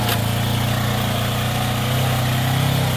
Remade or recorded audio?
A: recorded